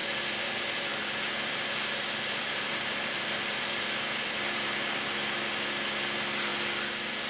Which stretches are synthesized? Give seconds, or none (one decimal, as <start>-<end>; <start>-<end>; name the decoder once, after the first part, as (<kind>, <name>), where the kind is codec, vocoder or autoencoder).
0.9-4.7 (vocoder, BigVGAN v2)